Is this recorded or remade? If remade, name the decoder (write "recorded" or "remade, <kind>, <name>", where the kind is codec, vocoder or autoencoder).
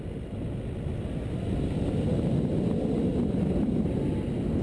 recorded